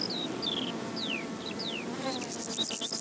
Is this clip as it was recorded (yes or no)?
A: yes